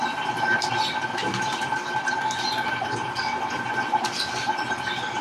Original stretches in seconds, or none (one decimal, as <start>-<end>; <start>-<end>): 0.0-1.0; 3.7-5.2